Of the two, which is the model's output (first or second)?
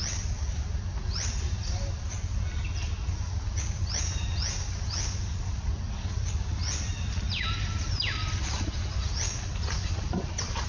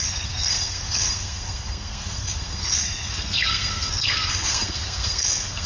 second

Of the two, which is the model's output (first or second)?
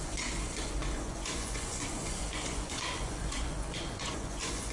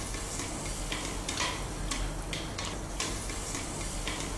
first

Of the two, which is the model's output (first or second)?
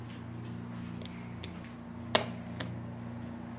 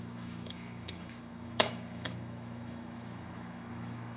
second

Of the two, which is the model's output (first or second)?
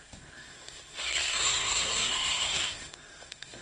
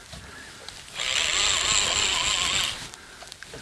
first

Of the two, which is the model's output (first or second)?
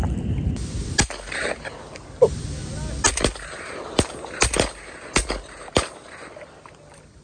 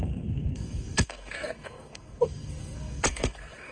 second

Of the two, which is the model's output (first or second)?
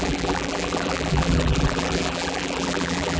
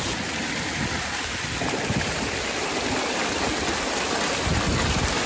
first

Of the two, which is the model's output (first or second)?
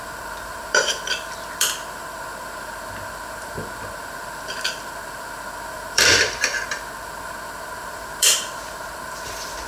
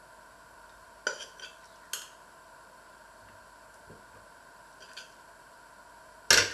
first